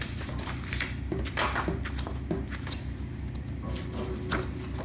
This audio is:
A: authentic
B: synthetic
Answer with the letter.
A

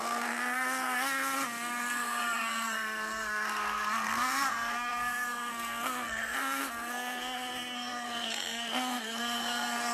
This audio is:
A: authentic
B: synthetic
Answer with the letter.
B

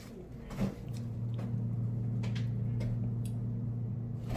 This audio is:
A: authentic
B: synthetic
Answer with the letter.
A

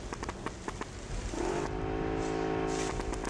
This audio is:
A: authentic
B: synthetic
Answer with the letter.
A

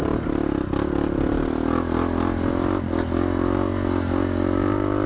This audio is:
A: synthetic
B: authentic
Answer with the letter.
B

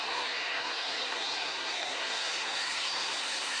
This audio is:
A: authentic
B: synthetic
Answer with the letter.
B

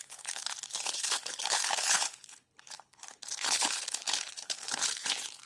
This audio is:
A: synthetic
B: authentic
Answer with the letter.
A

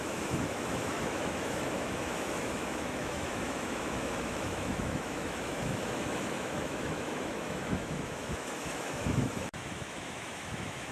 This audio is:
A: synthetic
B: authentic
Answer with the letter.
A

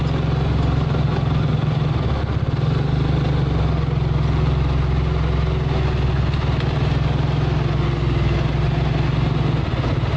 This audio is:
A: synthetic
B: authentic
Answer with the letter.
B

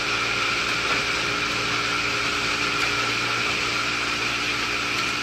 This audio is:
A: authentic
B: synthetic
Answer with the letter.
A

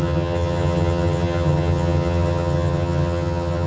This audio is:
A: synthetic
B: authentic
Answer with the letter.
A